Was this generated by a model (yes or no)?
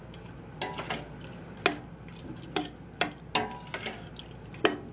no